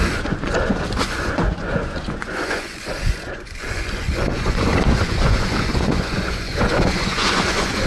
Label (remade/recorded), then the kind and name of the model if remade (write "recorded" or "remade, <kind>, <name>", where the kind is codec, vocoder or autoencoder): remade, vocoder, Vocos